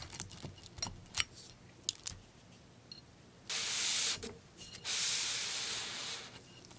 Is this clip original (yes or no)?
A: yes